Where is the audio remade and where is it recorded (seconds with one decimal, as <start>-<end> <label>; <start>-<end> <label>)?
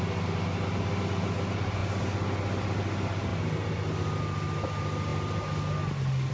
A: 0.0-6.3 recorded